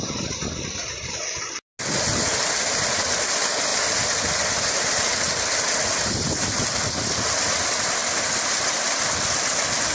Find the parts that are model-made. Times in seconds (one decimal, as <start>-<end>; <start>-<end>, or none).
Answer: none